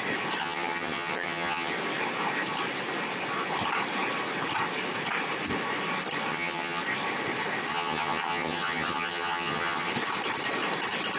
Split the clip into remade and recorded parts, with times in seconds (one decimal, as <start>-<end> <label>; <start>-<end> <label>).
0.0-0.4 recorded; 0.4-1.7 remade; 1.7-6.3 recorded; 6.3-6.8 remade; 6.8-7.7 recorded; 7.7-9.9 remade; 9.9-11.2 recorded